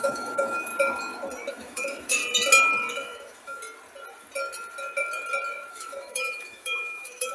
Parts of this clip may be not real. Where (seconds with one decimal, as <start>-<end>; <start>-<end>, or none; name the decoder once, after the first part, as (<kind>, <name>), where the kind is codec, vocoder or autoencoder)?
0.0-0.7 (autoencoder, DAC-VAE); 1.5-2.2; 2.9-3.6; 5.7-7.3